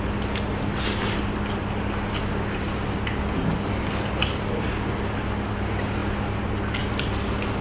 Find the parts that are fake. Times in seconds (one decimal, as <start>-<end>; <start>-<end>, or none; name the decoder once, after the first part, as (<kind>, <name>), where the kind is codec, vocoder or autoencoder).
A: none